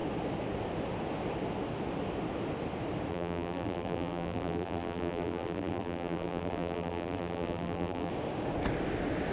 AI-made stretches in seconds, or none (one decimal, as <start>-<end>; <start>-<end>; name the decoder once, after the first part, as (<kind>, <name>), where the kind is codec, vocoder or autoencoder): 3.1-8.1 (vocoder, BigVGAN v2)